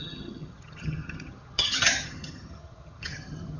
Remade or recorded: remade